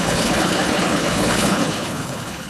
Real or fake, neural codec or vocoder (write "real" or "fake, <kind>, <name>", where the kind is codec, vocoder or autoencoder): fake, codec, HILCodec